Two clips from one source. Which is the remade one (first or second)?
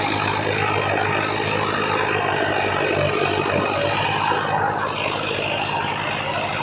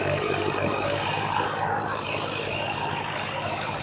second